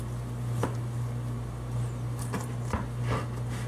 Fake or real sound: real